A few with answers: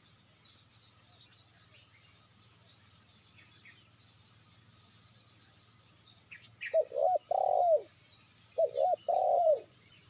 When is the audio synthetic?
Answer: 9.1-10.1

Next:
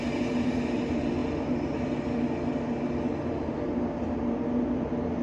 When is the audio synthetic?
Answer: none

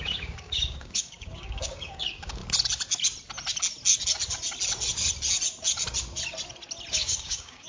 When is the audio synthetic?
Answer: 0.0-2.4; 6.9-7.7

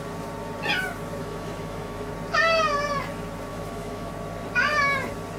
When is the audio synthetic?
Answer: 1.2-2.1; 3.5-4.1

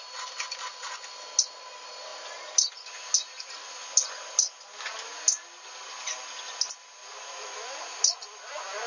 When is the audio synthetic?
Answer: none

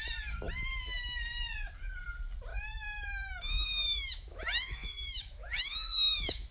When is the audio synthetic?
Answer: 2.5-6.5

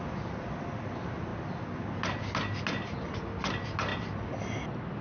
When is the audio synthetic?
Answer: none